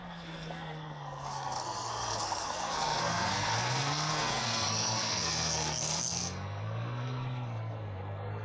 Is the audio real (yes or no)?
no